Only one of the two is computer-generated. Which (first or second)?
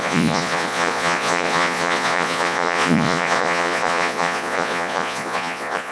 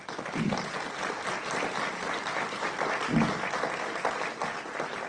first